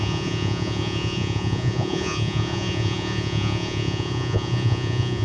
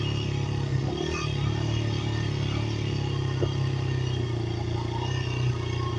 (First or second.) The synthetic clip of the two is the first